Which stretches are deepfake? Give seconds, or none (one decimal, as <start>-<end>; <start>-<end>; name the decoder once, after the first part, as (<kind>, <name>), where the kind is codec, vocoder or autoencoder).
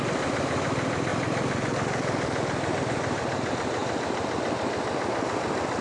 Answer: none